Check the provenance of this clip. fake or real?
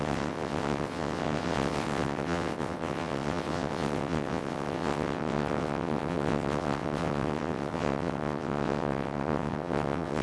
fake